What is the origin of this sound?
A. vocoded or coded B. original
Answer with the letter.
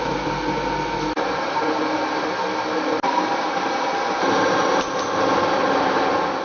B